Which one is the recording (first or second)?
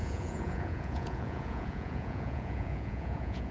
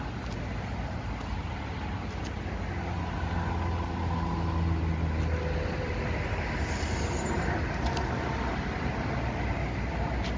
second